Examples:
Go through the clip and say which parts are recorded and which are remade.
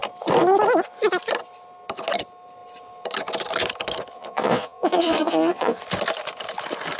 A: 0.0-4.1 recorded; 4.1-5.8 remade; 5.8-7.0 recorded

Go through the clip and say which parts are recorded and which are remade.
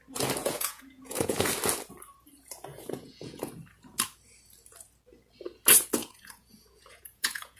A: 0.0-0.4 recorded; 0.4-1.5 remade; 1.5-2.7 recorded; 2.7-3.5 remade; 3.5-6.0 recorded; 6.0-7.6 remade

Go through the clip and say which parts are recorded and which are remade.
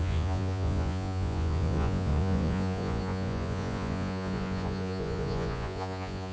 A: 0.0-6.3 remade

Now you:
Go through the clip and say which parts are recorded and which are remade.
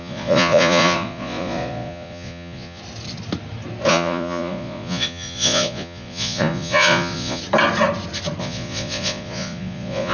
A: 0.0-2.8 remade; 2.8-3.9 recorded; 3.9-7.4 remade; 7.4-8.4 recorded; 8.4-10.1 remade